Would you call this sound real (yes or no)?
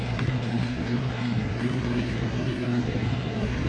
no